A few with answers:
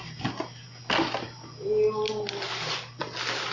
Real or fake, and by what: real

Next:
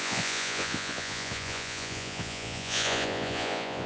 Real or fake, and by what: fake, vocoder, Vocos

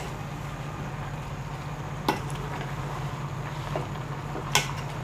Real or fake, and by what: real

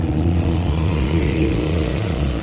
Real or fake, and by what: fake, vocoder, Vocos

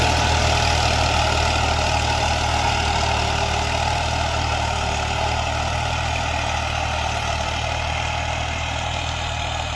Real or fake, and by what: real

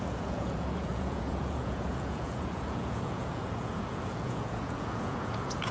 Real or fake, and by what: fake, vocoder, Vocos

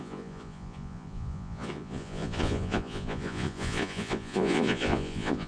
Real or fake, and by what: fake, vocoder, Vocos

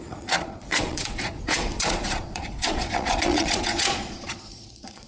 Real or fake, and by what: fake, vocoder, Vocos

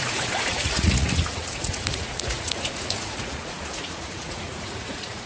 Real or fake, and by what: fake, vocoder, Vocos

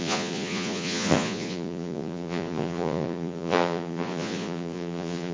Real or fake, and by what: fake, vocoder, Vocos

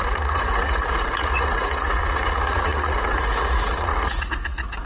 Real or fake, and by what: fake, vocoder, Vocos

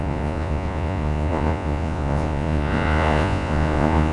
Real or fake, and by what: fake, vocoder, Vocos